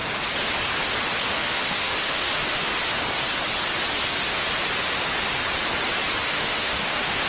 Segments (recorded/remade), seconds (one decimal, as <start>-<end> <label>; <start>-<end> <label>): 0.0-1.3 recorded; 1.3-2.7 remade; 2.7-6.2 recorded; 6.2-7.3 remade